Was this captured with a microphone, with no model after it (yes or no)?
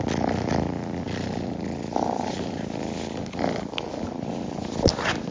yes